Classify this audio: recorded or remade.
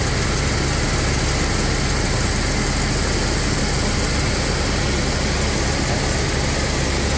recorded